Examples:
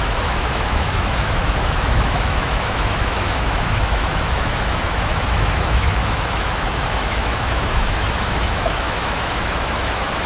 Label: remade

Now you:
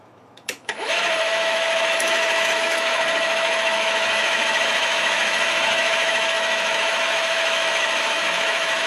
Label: remade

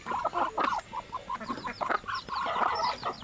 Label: recorded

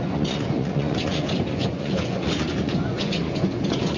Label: remade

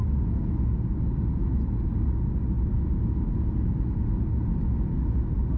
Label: recorded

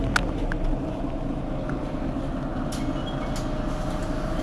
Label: recorded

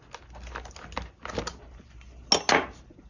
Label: recorded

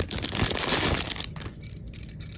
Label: recorded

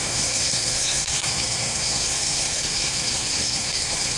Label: remade